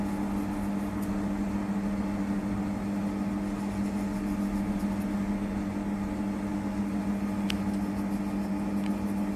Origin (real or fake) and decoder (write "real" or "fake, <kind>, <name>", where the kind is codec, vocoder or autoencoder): real